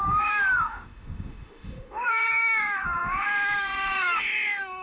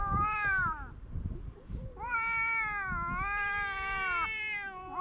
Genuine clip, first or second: second